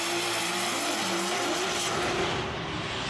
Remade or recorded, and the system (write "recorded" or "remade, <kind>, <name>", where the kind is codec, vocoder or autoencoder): recorded